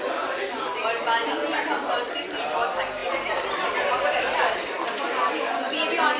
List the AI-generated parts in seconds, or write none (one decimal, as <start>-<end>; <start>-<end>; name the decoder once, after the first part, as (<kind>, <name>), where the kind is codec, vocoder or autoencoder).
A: 3.0-5.0 (vocoder, BigVGAN v2)